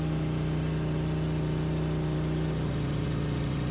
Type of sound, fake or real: real